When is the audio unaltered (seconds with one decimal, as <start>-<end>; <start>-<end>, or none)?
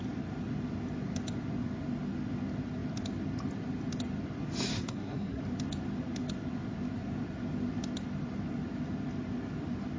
0.0-4.7; 5.4-10.0